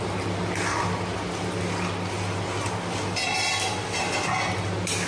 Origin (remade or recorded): recorded